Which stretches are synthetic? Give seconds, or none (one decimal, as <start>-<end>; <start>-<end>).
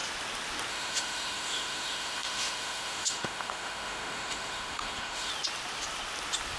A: 0.7-5.3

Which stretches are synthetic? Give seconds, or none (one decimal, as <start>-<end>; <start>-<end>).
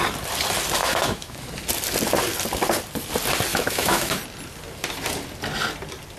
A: 0.8-1.4; 3.5-4.2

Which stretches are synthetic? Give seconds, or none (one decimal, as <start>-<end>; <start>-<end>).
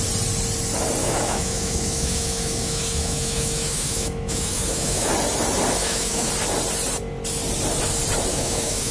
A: 1.0-5.1; 5.8-6.3; 8.3-8.9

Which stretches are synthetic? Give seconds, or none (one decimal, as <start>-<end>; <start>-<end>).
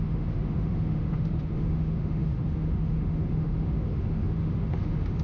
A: 0.0-5.2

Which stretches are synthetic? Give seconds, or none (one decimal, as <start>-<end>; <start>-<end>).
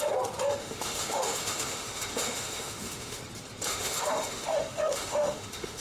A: 0.6-3.2; 3.7-5.8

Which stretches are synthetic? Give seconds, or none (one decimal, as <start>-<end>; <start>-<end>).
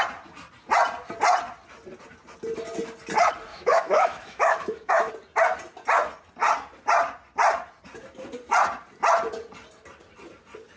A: 3.5-5.1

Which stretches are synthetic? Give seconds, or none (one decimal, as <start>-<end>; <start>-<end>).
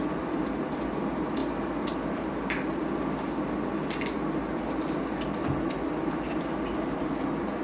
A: none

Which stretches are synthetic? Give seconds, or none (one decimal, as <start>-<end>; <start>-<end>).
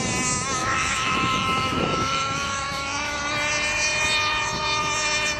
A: 0.6-3.2